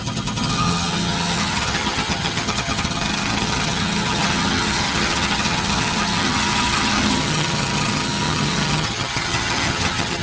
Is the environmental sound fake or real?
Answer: fake